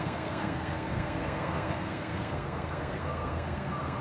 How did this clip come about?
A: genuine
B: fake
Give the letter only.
B